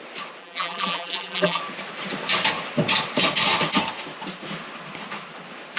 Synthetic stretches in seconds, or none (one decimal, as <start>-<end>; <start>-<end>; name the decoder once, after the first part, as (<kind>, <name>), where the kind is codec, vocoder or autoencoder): 0.4-1.6 (vocoder, BigVGAN v2)